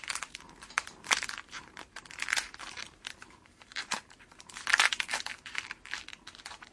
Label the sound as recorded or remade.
remade